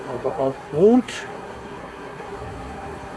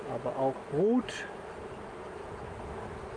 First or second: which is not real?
first